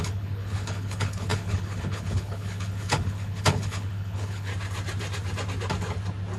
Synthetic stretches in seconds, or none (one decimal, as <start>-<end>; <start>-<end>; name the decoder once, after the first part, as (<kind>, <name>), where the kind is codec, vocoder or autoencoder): 0.0-4.5 (codec, HILCodec)